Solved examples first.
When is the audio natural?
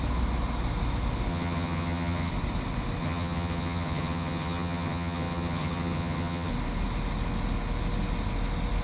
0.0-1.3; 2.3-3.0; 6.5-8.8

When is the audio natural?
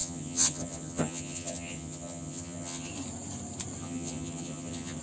2.9-3.8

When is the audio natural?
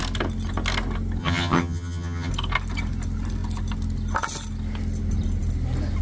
0.0-1.2; 2.3-6.0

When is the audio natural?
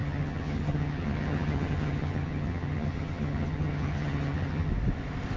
4.7-5.4